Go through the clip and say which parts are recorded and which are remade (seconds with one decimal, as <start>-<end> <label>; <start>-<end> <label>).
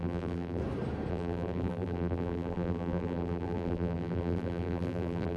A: 0.0-0.6 remade; 0.6-1.1 recorded; 1.1-5.4 remade